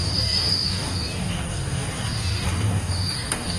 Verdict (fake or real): fake